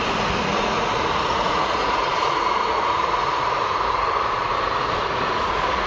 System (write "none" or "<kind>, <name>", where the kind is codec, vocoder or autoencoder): vocoder, Vocos